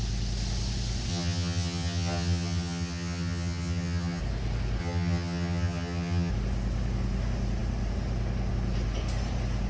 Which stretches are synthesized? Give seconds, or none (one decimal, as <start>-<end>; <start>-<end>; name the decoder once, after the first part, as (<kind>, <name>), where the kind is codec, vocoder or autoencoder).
1.1-4.2 (vocoder, HiFi-GAN); 4.8-6.3